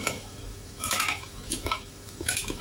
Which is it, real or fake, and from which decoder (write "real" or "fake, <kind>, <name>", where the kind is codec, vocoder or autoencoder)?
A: fake, autoencoder, DAC-VAE